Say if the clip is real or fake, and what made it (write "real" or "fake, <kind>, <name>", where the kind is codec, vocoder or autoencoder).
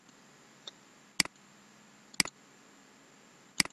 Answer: real